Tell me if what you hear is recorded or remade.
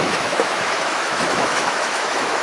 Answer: remade